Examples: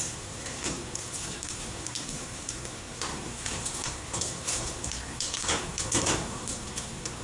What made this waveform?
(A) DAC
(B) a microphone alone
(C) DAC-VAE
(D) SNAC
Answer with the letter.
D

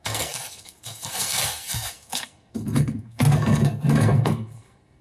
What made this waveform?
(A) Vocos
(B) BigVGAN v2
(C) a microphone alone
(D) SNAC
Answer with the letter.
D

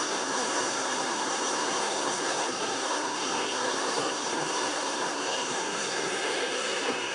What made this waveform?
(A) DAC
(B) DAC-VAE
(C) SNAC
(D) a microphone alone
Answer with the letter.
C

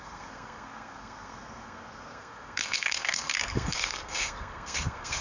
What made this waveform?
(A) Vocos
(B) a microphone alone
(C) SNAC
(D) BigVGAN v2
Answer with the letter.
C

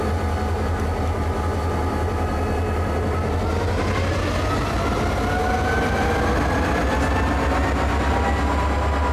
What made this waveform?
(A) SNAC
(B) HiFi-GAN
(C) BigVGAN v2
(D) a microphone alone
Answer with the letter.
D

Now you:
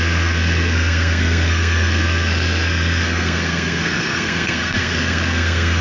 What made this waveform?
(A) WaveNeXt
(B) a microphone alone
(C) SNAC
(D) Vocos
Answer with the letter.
C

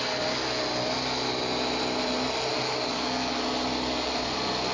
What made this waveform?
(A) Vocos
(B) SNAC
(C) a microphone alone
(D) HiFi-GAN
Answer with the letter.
C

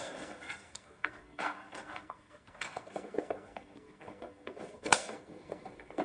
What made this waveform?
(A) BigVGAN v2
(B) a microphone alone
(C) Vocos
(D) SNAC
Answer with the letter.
D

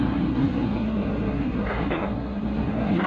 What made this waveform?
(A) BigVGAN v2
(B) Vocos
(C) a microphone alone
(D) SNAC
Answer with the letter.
D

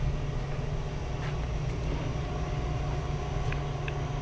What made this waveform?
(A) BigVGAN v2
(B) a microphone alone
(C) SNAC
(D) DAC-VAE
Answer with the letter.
B